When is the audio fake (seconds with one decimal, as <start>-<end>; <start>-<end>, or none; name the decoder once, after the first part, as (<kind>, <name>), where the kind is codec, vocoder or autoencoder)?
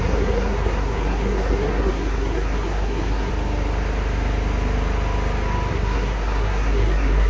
0.0-3.3 (codec, SNAC); 5.7-7.3